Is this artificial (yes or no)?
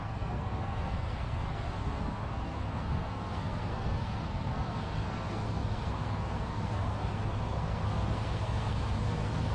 yes